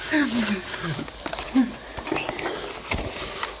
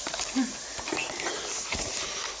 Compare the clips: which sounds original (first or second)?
first